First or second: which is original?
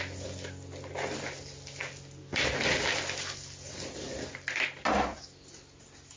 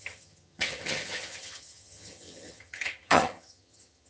first